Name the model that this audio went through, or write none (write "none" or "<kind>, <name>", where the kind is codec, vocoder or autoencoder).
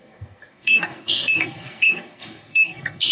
codec, SNAC